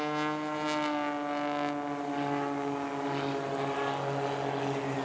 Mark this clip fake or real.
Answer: real